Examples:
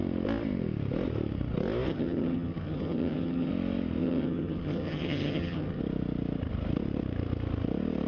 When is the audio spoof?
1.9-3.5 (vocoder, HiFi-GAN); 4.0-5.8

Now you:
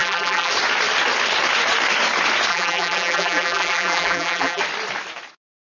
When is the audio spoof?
0.0-0.5 (vocoder, BigVGAN v2); 2.5-4.6

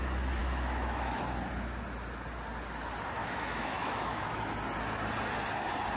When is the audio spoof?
0.4-1.2 (autoencoder, DAC-VAE); 3.2-4.4

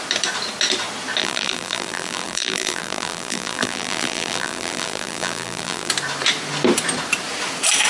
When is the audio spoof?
1.2-5.9 (vocoder, BigVGAN v2)